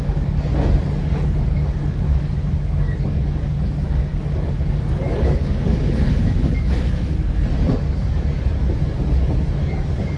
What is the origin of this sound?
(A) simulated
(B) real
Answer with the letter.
A